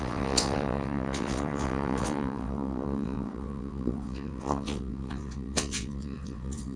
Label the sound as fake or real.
fake